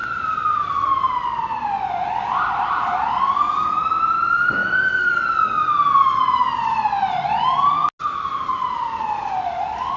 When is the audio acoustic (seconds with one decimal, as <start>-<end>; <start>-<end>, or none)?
1.1-4.6; 5.4-10.0